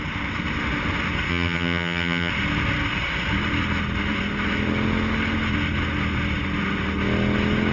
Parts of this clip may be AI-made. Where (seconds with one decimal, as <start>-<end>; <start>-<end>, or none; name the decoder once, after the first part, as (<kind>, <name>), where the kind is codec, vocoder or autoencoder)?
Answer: 1.3-2.3 (vocoder, HiFi-GAN)